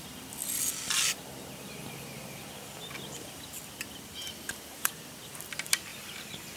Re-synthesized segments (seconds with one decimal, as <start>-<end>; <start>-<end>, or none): 4.2-4.9; 5.9-6.6